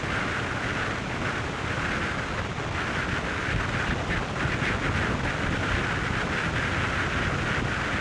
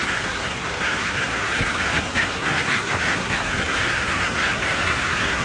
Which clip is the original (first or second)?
first